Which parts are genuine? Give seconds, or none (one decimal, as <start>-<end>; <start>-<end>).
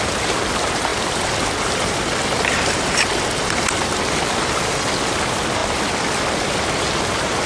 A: 0.0-0.9; 4.0-7.5